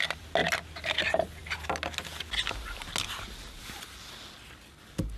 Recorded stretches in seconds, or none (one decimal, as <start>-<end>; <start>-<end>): 0.0-5.2